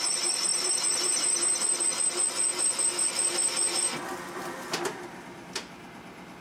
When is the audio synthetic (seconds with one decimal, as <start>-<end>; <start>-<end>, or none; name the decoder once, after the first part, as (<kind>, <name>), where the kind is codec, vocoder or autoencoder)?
0.5-1.8 (vocoder, BigVGAN v2); 2.5-4.8